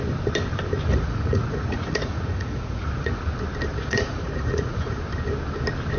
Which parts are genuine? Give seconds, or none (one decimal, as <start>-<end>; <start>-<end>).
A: 0.0-0.9; 3.2-3.7; 5.0-6.0